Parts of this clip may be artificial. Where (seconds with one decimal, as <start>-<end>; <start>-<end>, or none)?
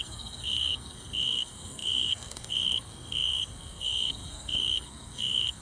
0.0-5.6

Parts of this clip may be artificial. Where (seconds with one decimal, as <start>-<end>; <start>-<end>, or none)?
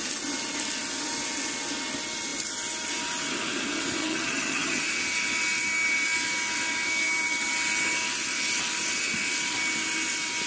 4.0-4.8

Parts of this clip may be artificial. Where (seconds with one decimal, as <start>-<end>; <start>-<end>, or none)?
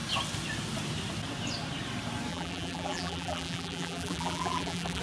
2.3-5.0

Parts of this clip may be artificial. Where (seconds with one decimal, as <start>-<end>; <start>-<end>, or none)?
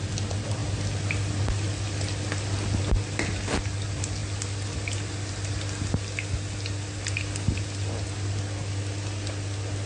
none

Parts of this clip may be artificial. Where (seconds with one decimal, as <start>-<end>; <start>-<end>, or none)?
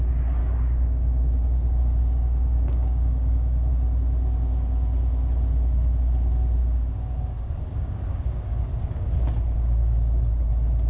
0.4-3.7; 6.6-10.5